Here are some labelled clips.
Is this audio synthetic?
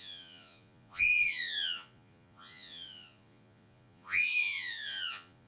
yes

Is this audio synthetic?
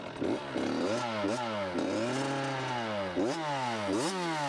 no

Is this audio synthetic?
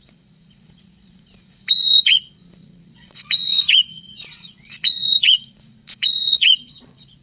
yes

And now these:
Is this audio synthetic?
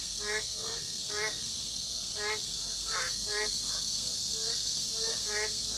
yes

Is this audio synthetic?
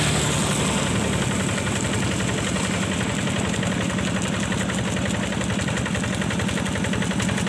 no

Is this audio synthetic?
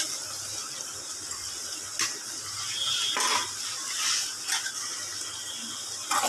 no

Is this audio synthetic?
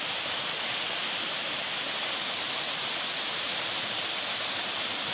no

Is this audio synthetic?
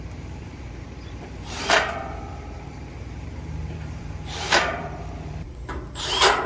yes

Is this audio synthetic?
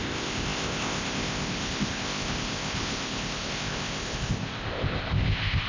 yes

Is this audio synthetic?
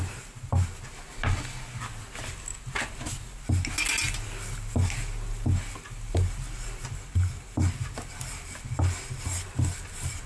no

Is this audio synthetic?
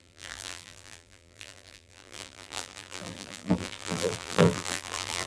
yes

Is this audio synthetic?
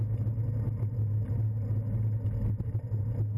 no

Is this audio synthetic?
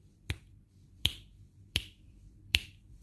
yes